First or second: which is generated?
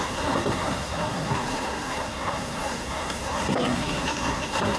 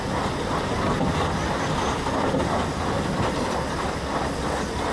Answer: first